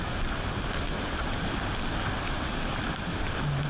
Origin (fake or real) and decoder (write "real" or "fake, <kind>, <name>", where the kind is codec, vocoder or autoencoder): real